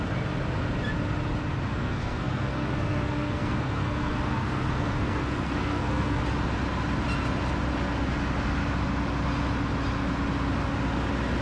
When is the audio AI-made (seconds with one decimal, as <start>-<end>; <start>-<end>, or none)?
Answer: 1.7-6.2